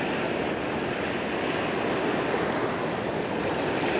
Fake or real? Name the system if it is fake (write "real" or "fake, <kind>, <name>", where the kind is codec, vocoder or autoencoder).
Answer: real